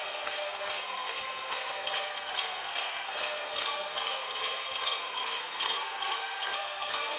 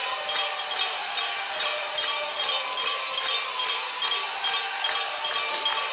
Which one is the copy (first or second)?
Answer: first